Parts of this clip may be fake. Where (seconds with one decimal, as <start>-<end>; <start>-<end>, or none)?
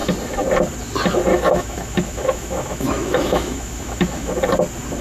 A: 1.3-4.3